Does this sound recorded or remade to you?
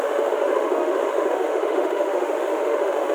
remade